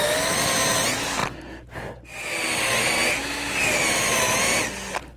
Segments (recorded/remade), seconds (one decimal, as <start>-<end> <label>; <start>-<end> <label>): 0.0-5.2 recorded